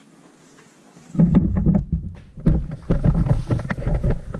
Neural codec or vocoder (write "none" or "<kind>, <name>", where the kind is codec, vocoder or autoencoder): none